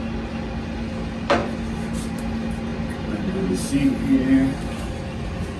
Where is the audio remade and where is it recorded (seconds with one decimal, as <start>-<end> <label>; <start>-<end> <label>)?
0.0-1.4 recorded; 1.4-2.2 remade; 2.2-2.7 recorded; 2.7-3.5 remade; 3.5-5.6 recorded